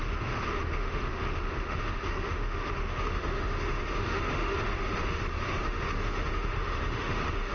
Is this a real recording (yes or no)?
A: no